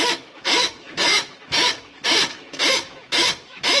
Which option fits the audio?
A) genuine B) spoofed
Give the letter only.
B